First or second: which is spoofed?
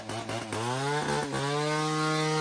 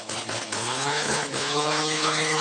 second